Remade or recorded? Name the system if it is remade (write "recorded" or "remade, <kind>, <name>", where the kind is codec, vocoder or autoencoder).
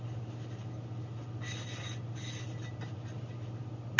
recorded